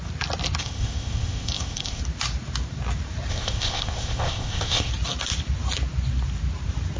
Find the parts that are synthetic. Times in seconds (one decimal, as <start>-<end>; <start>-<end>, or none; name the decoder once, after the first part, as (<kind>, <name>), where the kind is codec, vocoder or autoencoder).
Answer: 0.6-2.0 (codec, ZipCodec); 3.3-4.9